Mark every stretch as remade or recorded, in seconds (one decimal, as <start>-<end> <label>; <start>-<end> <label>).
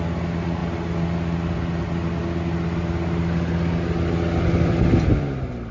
0.0-5.7 recorded